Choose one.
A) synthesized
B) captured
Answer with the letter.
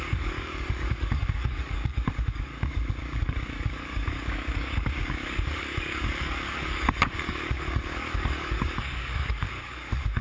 A